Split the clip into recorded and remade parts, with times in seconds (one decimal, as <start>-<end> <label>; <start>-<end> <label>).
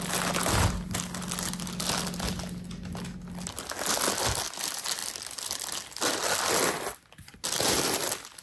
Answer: 0.0-8.4 recorded